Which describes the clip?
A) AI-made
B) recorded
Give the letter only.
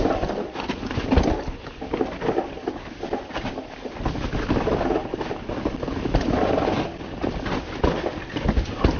B